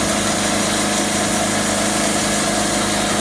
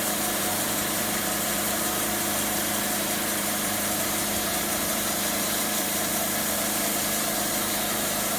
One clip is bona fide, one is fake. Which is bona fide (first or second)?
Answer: first